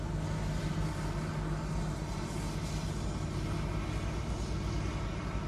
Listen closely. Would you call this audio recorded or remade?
recorded